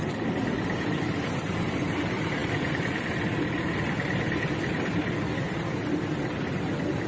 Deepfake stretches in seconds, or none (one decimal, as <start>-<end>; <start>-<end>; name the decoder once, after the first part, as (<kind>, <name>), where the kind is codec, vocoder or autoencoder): none